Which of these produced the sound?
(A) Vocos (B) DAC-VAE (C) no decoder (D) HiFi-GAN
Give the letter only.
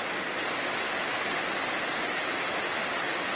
C